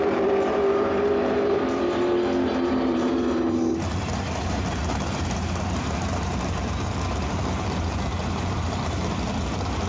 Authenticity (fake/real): fake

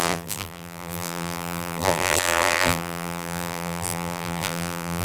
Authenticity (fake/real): fake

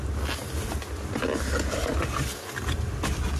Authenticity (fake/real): real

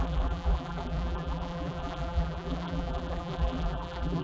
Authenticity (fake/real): fake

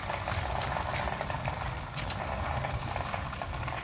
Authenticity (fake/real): fake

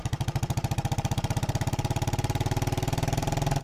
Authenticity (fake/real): fake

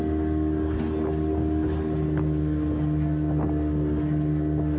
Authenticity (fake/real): real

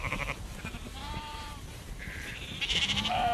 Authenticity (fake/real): fake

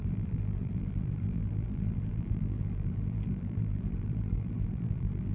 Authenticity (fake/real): fake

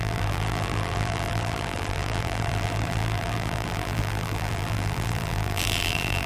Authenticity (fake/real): fake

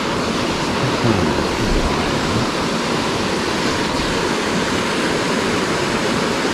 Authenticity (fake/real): real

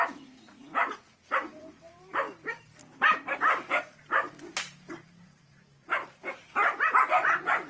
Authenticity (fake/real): fake